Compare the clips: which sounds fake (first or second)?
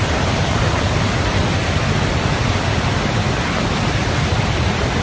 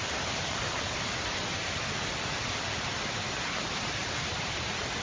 second